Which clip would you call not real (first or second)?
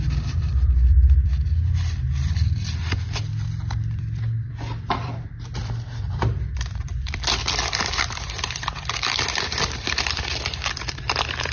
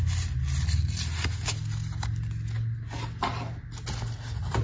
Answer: first